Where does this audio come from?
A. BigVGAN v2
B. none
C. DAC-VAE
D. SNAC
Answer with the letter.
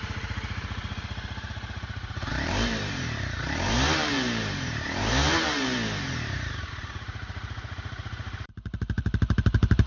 A